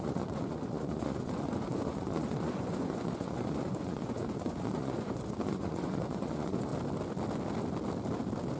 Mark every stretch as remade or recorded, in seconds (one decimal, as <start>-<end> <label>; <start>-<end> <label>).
0.0-6.7 remade; 6.7-8.6 recorded